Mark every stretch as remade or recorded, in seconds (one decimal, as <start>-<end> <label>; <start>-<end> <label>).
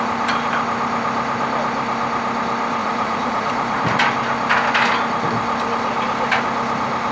0.0-2.8 recorded; 2.8-3.8 remade; 3.8-7.1 recorded